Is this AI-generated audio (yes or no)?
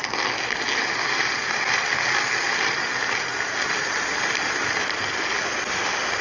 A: no